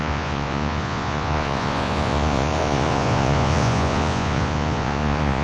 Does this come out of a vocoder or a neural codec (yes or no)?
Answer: yes